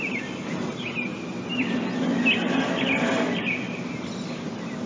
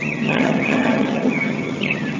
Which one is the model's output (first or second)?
second